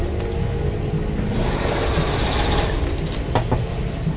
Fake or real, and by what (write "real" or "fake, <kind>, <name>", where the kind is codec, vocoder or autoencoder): real